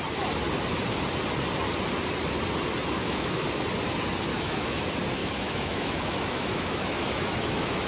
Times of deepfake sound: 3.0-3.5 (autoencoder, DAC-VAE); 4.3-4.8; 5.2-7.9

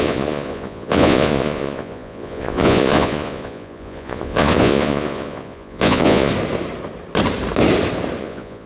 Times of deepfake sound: 0.0-6.3 (vocoder, Vocos); 8.2-8.7

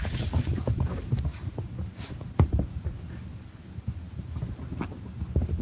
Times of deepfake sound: none

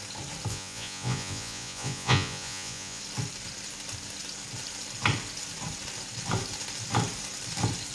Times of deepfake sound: 0.5-3.0 (vocoder, Vocos)

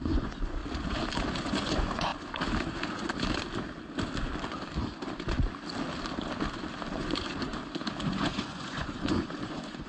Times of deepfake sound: 0.0-0.6 (vocoder, Vocos); 1.3-2.1; 6.9-7.5; 8.1-9.9